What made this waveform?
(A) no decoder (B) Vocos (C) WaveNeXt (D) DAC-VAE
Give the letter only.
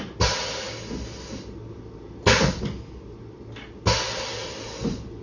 A